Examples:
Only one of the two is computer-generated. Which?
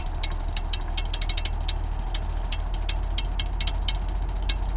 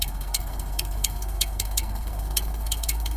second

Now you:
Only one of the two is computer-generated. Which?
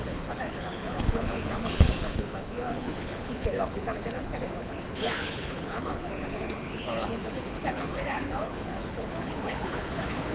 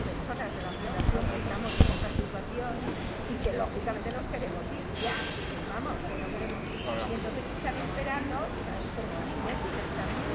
first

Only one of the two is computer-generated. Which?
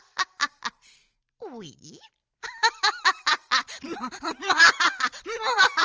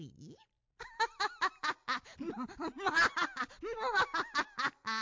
first